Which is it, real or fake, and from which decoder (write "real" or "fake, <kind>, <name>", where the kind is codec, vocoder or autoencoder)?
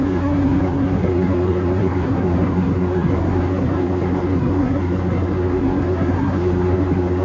fake, codec, SNAC